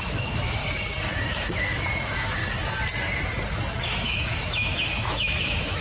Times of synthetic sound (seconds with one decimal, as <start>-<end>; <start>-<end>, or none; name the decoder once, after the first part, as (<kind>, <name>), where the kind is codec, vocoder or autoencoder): 0.0-0.6 (autoencoder, DAC-VAE); 1.3-2.4; 3.8-5.8